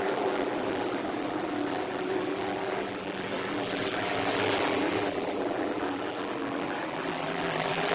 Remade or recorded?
remade